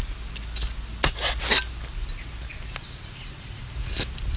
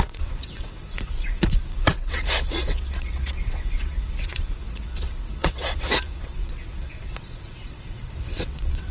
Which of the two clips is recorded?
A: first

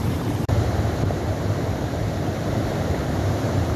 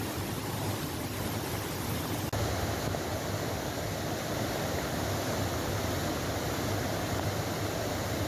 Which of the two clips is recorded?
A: second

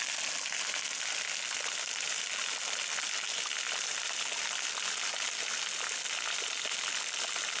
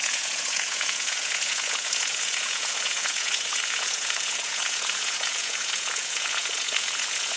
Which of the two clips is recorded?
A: first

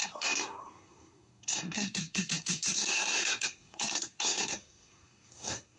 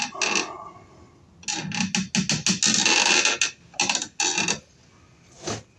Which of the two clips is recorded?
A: second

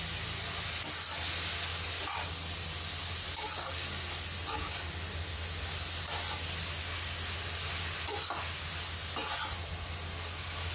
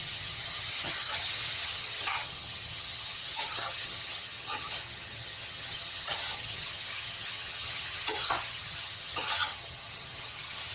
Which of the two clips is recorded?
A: first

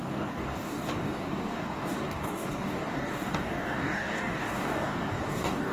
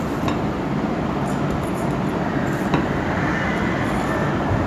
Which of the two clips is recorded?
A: second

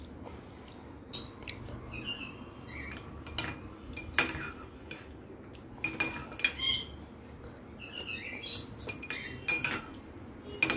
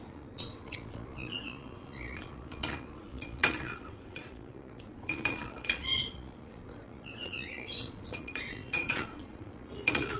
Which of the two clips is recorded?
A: first